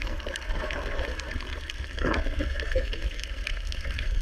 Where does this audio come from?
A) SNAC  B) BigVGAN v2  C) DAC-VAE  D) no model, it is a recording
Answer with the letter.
A